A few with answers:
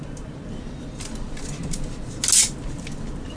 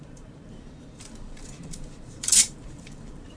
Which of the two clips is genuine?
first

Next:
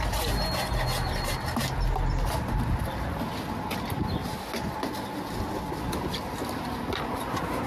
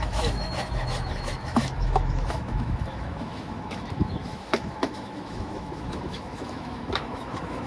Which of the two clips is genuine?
first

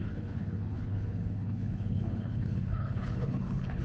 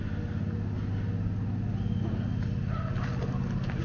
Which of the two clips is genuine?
second